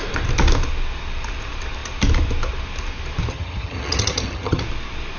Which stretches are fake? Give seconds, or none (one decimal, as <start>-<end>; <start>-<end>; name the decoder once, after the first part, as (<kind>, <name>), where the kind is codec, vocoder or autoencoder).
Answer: 3.3-4.6 (vocoder, HiFi-GAN)